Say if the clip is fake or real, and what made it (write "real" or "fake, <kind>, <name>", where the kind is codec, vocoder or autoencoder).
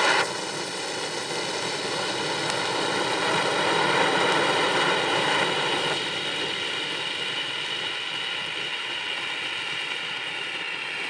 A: real